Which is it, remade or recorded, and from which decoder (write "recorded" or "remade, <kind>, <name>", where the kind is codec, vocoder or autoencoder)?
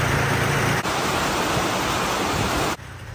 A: recorded